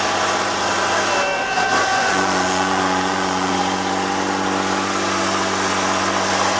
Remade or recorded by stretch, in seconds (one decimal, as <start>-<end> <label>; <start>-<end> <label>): 0.0-1.9 recorded; 1.9-3.5 remade; 3.5-6.6 recorded